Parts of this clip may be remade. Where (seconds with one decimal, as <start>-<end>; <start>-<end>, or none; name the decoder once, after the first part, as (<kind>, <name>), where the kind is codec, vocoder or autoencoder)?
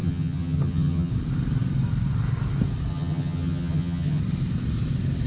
0.0-1.1 (vocoder, HiFi-GAN); 2.9-4.2